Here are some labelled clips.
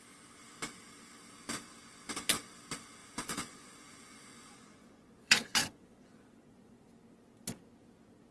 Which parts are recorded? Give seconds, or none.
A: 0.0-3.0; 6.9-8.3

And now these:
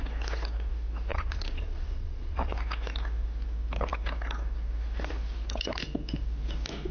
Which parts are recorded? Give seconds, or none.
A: 0.0-1.1; 2.5-6.9

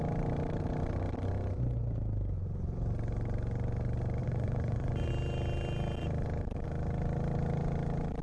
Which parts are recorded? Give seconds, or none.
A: 0.0-4.2; 5.1-8.2